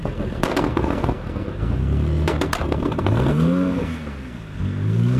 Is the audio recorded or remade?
remade